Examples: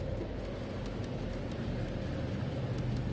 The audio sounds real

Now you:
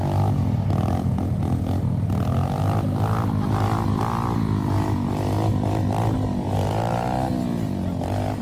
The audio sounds real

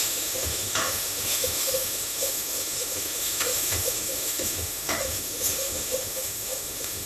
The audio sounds fake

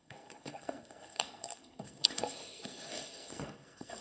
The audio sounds fake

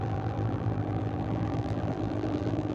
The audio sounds fake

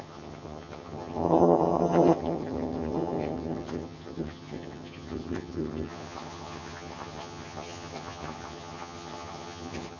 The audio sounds fake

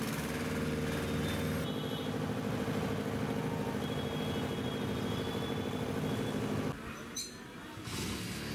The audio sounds real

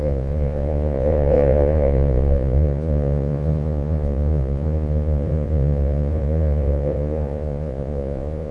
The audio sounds fake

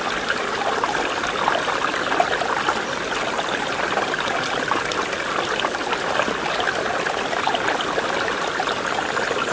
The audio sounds real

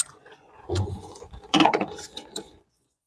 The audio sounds fake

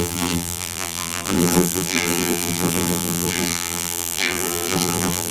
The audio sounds fake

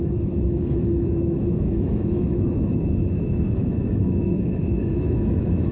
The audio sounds fake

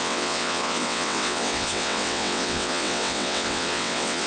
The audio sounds fake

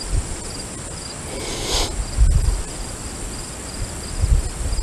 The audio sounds real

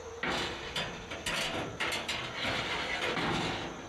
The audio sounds real